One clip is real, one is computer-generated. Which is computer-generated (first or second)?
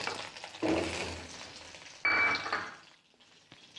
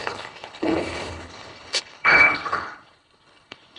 second